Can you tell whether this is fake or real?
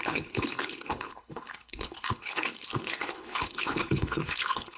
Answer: fake